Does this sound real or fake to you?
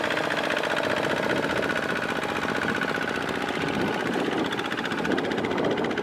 real